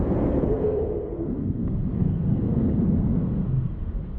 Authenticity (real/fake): fake